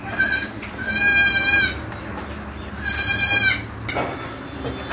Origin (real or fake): real